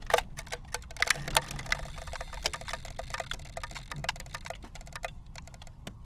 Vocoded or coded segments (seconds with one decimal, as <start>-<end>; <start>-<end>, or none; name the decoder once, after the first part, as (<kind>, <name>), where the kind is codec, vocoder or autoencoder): none

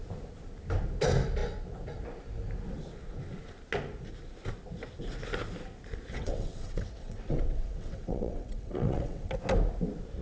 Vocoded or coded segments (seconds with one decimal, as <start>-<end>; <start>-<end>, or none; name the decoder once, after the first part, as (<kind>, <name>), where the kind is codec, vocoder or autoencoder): 6.1-9.3 (vocoder, WaveNeXt)

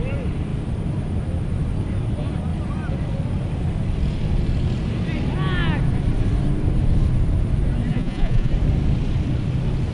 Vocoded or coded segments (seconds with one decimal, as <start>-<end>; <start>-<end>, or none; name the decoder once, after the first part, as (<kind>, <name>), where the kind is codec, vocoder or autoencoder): 7.9-8.5 (vocoder, Vocos)

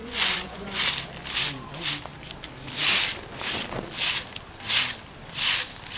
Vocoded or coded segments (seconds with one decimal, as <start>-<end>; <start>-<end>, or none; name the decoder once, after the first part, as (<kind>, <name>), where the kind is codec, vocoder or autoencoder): 0.0-0.8 (vocoder, Vocos)

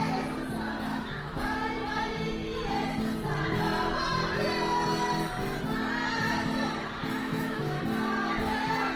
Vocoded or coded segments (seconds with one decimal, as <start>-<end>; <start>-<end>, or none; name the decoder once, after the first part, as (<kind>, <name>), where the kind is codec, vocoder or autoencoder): 0.9-1.4 (autoencoder, DAC-VAE); 7.2-7.8

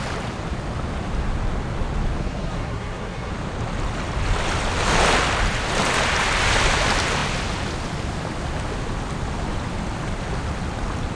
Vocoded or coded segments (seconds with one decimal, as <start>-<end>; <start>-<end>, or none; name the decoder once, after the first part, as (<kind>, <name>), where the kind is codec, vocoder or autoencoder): 2.2-3.3 (codec, SNAC)